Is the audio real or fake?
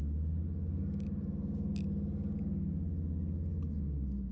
real